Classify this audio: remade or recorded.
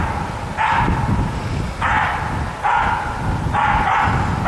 recorded